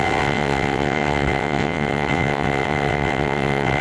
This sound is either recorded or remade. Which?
remade